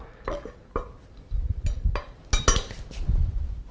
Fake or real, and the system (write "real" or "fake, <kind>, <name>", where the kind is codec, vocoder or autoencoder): real